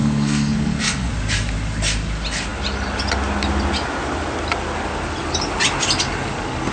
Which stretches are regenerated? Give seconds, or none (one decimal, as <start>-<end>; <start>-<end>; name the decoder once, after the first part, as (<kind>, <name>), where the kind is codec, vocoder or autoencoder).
0.0-1.1 (codec, SNAC)